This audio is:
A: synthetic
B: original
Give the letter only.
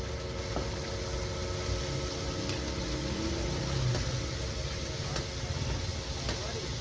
B